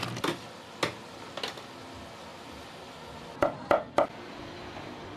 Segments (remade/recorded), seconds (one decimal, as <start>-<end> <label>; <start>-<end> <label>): 0.0-5.2 recorded